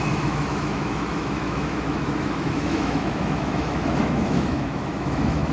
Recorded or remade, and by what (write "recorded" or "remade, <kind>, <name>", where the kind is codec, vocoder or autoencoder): remade, autoencoder, DAC-VAE